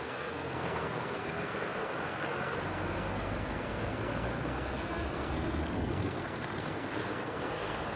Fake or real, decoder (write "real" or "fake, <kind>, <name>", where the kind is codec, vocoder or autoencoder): fake, codec, SNAC